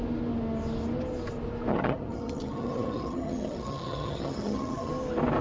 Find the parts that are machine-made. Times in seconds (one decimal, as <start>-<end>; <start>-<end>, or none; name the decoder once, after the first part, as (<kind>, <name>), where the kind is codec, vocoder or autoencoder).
1.7-4.9 (vocoder, HiFi-GAN)